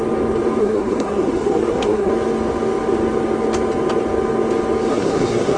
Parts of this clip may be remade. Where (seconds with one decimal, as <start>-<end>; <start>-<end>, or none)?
0.6-2.1; 4.9-5.6

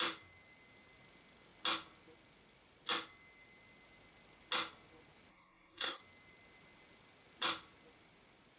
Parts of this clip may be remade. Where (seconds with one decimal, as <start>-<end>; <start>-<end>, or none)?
5.3-6.0

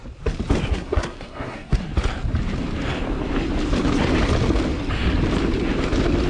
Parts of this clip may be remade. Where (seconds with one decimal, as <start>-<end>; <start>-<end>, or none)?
0.7-1.8